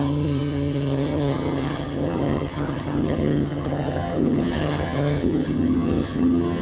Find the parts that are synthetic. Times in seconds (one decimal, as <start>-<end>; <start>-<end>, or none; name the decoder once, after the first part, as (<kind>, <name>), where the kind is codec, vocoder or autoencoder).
0.0-6.6 (vocoder, HiFi-GAN)